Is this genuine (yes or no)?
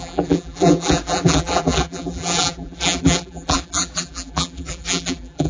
no